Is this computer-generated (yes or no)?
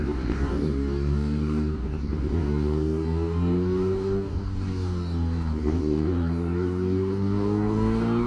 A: yes